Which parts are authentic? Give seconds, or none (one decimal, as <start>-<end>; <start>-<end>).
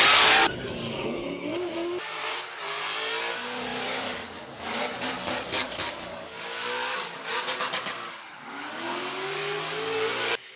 1.5-3.3